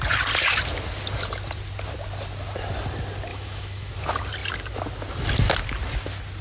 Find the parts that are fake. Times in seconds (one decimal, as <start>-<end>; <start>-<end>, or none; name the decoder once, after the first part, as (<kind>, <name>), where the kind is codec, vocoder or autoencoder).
3.3-3.9 (autoencoder, DAC-VAE)